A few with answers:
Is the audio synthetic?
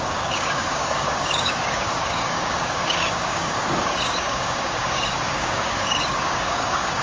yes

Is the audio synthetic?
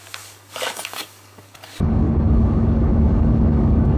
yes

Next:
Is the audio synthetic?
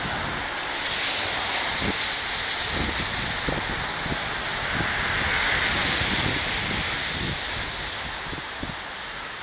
no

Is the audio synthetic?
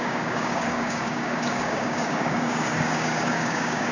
yes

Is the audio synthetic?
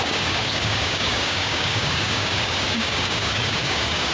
yes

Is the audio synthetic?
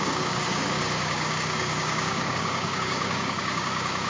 yes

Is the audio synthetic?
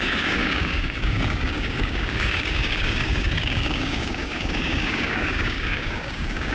yes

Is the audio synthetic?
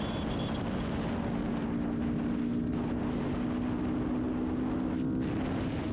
no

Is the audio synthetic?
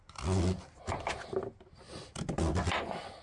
no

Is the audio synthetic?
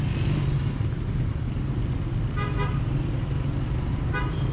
no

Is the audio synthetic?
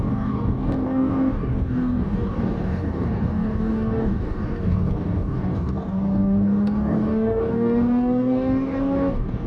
yes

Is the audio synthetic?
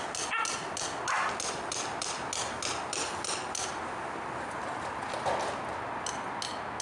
no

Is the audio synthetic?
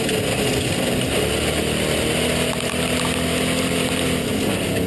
no